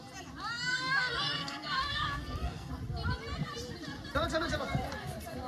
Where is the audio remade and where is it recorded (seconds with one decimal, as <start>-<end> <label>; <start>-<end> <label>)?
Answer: 0.0-0.7 recorded; 0.7-2.7 remade; 2.7-5.5 recorded